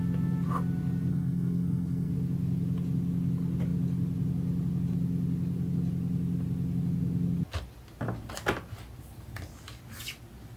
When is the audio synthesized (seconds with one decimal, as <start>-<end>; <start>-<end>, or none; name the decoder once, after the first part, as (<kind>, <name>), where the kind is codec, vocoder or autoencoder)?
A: 1.1-2.1 (codec, SNAC)